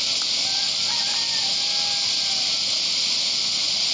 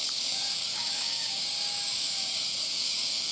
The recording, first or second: first